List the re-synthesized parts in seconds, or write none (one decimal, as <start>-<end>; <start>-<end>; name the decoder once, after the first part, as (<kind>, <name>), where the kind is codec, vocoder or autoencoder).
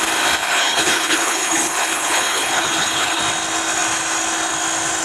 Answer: 0.4-3.2 (codec, HILCodec)